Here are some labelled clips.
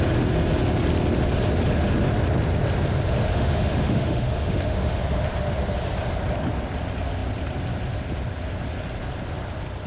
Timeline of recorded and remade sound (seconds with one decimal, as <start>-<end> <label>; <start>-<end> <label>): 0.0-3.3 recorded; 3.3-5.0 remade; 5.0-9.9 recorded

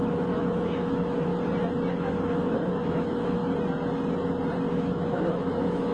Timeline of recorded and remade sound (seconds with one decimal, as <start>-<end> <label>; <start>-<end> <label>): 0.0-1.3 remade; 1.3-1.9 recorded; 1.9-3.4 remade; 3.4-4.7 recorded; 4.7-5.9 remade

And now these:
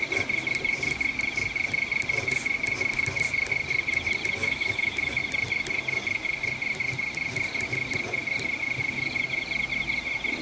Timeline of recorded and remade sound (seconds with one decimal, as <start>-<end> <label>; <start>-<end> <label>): 0.0-4.4 recorded; 4.4-5.2 remade; 5.2-10.4 recorded

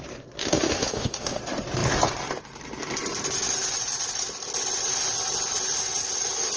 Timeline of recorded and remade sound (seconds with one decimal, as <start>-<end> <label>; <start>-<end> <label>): 0.0-0.4 recorded; 0.4-1.4 remade; 1.4-6.6 recorded